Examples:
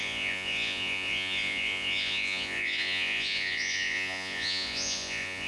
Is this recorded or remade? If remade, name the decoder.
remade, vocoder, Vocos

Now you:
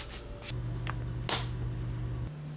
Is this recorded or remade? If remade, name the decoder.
recorded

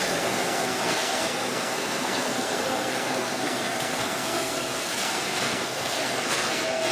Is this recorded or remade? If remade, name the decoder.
remade, codec, SNAC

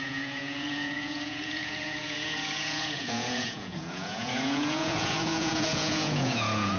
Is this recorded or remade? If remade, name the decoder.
remade, vocoder, Vocos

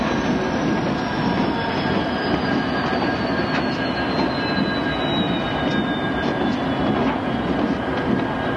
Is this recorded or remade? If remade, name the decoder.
recorded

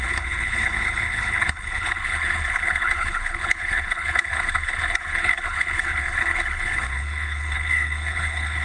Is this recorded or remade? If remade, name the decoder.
remade, codec, HILCodec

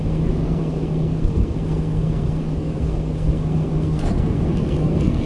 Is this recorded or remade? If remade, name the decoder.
remade, codec, SNAC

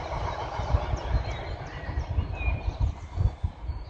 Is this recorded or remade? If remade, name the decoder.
recorded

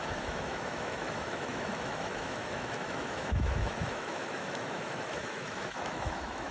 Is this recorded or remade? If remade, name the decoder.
remade, autoencoder, DAC-VAE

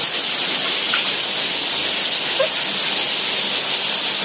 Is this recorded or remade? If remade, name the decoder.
recorded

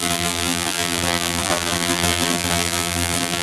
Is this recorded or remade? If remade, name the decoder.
remade, vocoder, BigVGAN v2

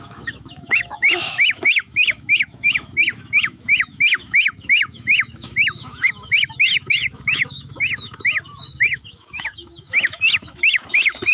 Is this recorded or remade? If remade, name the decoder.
remade, autoencoder, DAC-VAE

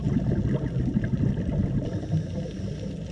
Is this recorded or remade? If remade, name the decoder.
recorded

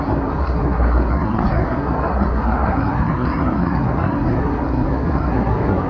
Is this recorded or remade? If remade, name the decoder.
remade, codec, SNAC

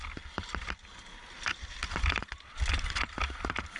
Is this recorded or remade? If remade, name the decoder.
recorded